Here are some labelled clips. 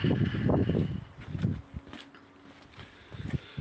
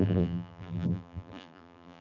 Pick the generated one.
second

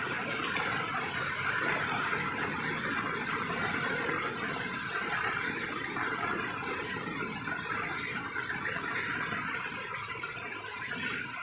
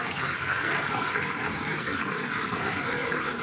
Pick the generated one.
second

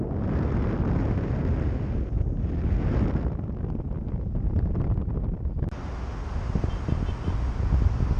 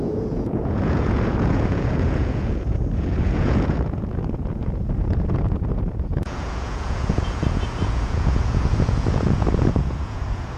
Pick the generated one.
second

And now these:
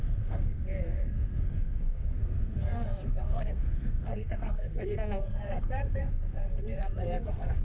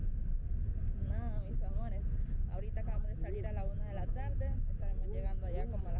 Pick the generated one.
first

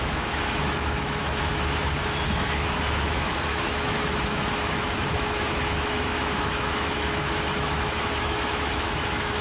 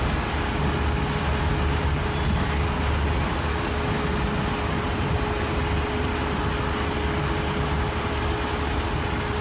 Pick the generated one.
first